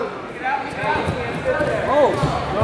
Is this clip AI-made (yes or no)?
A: no